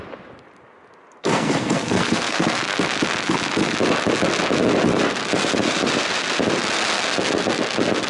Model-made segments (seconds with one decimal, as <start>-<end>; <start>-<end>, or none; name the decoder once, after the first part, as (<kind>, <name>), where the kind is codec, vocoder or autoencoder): 1.2-2.6 (codec, SNAC)